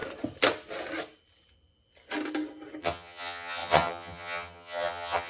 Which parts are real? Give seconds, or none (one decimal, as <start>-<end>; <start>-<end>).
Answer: 0.0-2.8